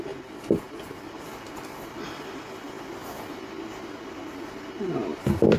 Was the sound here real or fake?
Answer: real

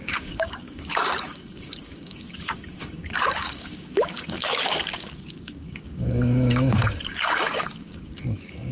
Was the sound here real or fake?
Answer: fake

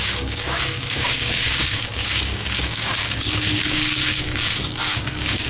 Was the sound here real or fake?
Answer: fake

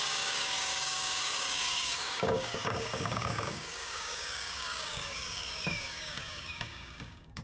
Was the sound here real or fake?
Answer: fake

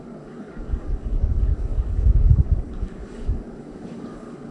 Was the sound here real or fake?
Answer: fake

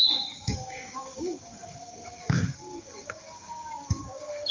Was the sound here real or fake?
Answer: fake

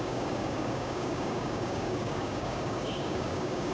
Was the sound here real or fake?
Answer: fake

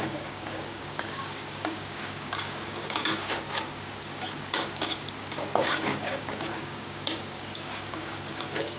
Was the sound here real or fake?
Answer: fake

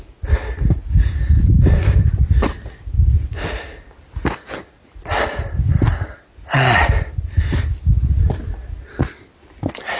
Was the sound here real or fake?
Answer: real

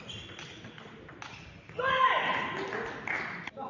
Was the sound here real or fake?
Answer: real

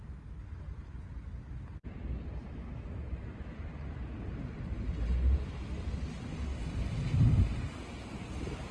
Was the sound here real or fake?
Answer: real